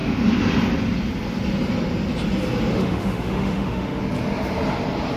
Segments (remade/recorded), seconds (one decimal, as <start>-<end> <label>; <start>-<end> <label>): 0.0-2.7 recorded; 2.7-4.0 remade; 4.0-5.2 recorded